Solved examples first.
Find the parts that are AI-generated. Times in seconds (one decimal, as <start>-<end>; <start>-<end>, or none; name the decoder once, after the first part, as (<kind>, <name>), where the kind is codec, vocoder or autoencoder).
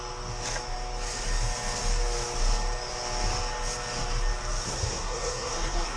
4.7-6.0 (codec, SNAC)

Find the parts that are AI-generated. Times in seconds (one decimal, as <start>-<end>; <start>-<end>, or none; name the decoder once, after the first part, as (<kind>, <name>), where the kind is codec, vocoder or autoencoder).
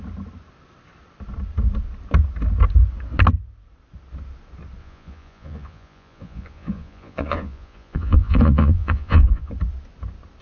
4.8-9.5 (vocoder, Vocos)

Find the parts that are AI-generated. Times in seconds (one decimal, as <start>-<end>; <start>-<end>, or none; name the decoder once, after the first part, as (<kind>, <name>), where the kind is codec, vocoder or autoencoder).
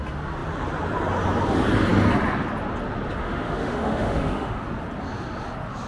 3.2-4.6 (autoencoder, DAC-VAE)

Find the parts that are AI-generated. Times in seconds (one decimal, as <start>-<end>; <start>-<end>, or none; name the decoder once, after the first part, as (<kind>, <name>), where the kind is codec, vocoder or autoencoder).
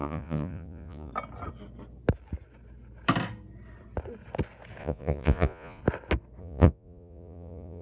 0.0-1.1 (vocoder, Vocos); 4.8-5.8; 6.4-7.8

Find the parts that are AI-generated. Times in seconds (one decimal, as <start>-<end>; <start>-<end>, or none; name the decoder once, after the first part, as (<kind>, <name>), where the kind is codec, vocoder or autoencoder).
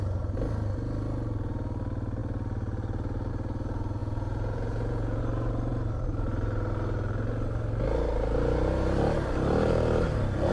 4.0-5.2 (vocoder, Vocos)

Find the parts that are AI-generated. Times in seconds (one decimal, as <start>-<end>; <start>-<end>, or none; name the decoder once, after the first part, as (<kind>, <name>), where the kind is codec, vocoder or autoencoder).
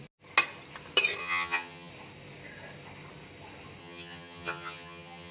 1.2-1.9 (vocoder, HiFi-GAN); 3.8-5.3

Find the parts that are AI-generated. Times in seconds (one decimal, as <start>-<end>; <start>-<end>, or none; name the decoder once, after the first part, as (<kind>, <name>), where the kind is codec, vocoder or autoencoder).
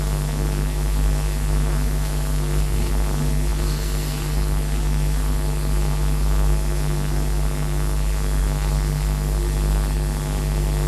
0.0-10.9 (codec, SNAC)